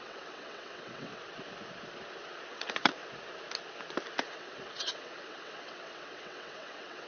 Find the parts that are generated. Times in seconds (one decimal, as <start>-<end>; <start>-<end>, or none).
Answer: 0.0-1.1; 2.5-3.0; 4.2-7.1